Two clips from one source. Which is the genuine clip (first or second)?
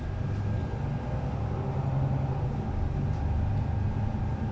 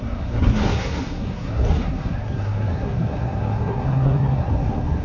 first